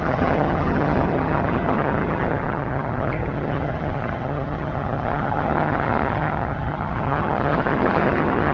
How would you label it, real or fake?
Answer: fake